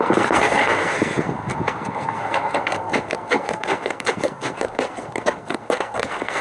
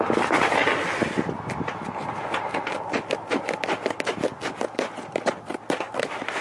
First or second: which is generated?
first